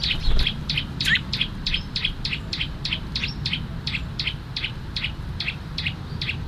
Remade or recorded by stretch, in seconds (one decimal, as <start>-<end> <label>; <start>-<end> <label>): 0.0-6.5 recorded